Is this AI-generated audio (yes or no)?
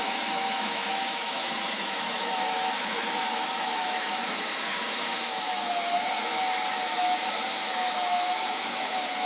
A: yes